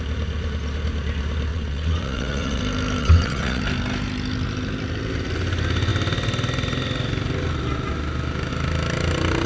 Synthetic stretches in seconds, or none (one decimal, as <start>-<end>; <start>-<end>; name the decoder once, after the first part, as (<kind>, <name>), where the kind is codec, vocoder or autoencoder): 1.5-2.6 (vocoder, WaveNeXt); 3.0-3.6